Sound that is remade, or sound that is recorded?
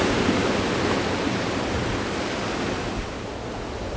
recorded